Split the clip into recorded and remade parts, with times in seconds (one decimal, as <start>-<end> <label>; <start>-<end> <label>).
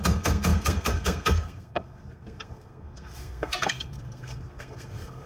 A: 0.0-5.3 remade